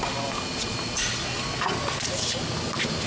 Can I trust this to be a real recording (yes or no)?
yes